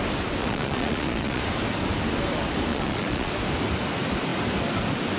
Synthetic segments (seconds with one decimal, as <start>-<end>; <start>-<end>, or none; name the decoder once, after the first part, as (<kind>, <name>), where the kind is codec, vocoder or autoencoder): 0.4-1.4 (vocoder, Vocos); 2.7-3.3